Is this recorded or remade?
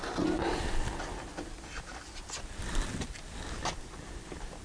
recorded